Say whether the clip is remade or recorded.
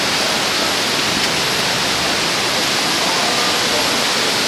recorded